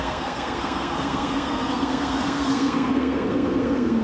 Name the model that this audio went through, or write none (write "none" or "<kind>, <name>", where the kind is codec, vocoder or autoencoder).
codec, SNAC